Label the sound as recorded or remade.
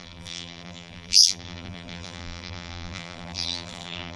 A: remade